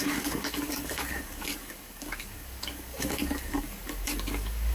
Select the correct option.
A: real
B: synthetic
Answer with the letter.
B